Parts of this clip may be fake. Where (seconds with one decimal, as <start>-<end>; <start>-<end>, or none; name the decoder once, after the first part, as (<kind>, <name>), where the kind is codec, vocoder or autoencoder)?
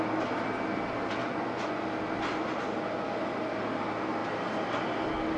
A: 1.2-1.8 (vocoder, Vocos)